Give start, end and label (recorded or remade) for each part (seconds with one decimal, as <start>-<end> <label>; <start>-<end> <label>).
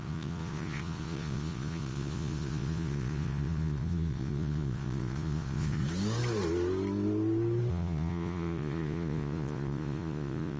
0.0-5.8 remade; 5.8-7.7 recorded; 7.7-10.6 remade